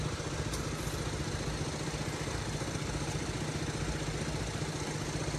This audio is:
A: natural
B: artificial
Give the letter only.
A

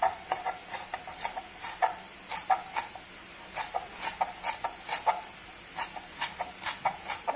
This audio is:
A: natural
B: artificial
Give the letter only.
A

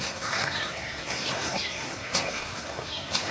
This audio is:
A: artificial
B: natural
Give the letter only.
A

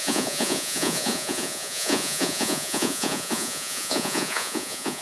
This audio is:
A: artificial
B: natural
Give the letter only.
A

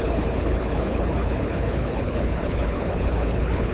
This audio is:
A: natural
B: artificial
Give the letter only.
B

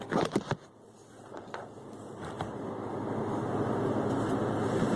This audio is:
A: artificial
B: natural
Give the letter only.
B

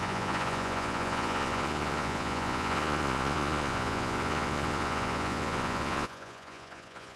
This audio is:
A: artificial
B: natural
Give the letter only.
A